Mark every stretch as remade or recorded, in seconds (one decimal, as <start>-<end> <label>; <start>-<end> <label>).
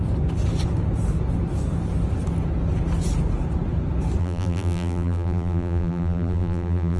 0.0-4.2 recorded; 4.2-7.0 remade